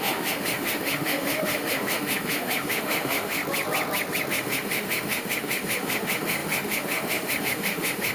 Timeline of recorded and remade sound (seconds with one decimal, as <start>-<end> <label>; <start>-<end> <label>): 0.0-3.4 remade; 3.4-4.3 recorded; 4.3-8.1 remade